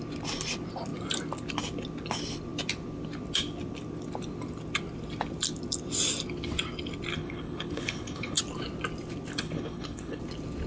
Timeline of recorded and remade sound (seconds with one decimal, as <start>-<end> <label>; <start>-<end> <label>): 0.0-7.1 recorded; 7.1-8.4 remade; 8.4-9.3 recorded; 9.3-10.2 remade; 10.2-10.7 recorded